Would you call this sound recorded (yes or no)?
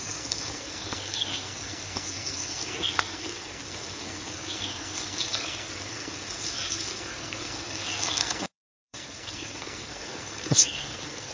no